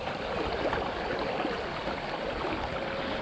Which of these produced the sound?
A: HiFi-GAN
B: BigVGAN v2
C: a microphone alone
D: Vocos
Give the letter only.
C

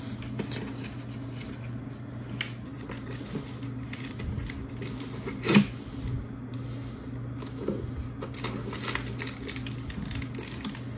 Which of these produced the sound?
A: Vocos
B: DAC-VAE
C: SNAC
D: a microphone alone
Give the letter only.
D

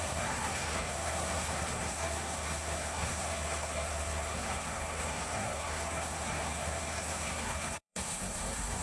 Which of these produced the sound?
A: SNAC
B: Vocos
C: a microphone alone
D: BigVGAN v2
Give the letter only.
A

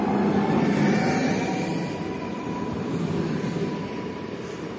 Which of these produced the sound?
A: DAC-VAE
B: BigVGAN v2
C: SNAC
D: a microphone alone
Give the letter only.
D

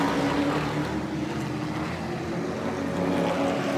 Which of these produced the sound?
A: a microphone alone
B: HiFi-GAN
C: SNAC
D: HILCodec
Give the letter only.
A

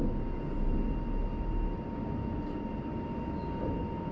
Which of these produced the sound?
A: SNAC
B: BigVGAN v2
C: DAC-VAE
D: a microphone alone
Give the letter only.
D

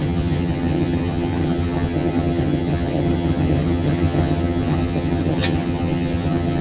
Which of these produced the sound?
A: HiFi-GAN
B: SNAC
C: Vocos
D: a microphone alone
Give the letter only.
A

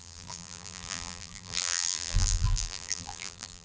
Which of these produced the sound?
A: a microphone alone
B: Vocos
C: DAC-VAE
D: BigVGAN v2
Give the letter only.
D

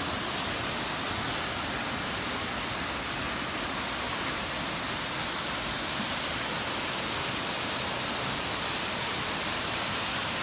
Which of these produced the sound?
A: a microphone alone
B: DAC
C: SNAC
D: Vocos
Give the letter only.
A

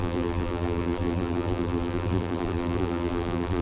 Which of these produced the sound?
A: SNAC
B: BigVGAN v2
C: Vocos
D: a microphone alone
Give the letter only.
B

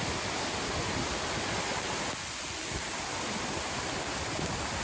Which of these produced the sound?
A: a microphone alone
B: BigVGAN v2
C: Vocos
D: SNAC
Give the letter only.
A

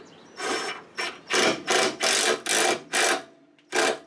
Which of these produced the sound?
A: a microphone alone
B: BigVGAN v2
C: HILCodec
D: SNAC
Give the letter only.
A